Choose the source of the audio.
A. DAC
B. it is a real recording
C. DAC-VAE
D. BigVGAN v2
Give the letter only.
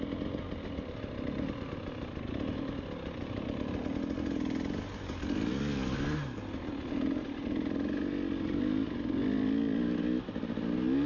B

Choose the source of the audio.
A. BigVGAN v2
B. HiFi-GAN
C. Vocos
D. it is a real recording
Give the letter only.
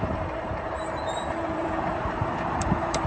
A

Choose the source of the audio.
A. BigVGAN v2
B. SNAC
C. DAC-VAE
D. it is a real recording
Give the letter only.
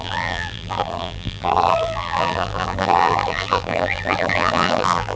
A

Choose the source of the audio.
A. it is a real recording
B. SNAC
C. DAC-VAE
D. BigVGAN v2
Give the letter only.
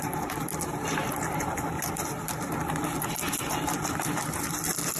A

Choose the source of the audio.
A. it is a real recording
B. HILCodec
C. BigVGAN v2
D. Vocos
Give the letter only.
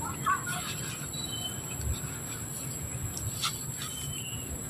A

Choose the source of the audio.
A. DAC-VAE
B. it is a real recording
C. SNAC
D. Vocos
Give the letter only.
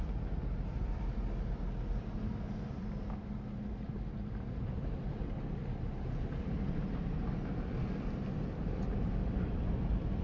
B